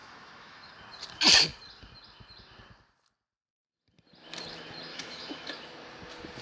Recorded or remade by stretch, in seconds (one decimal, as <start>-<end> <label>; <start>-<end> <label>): 0.0-0.7 remade; 0.7-4.9 recorded; 4.9-5.5 remade; 5.5-6.4 recorded